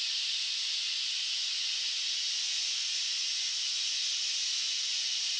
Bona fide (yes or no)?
yes